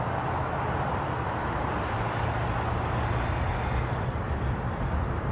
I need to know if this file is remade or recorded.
recorded